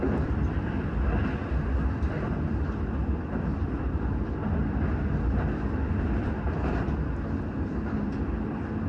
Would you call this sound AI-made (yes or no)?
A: yes